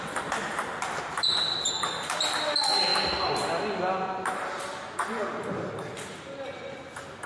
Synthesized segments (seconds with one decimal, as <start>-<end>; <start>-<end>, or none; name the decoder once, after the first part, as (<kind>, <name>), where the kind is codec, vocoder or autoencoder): none